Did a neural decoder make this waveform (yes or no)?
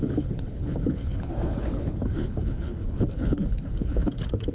yes